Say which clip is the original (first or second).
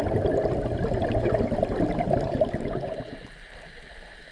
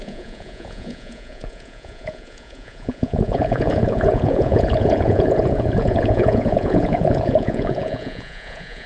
first